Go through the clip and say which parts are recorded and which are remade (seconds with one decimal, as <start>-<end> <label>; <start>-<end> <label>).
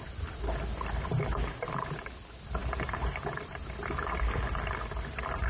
0.0-5.5 recorded